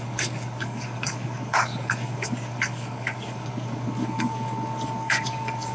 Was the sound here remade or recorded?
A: remade